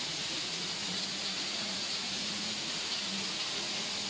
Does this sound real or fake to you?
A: fake